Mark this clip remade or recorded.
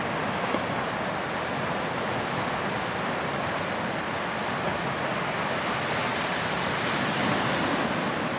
recorded